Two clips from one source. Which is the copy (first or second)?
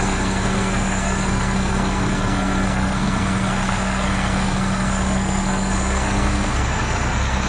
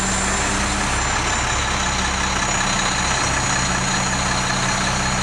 first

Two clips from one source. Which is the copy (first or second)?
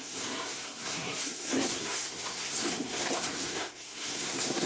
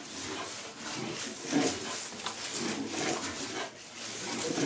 first